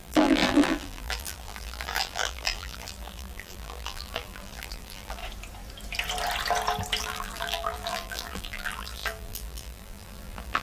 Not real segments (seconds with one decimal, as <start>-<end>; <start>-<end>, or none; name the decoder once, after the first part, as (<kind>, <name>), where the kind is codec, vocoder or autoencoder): 0.0-5.2 (vocoder, BigVGAN v2); 7.0-10.6